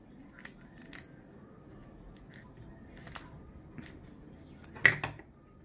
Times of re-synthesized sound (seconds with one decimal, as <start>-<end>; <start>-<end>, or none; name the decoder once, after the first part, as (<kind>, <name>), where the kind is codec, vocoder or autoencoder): none